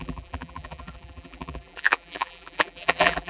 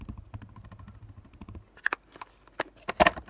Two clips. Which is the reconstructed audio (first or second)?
first